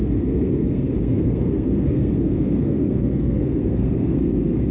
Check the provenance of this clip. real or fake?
fake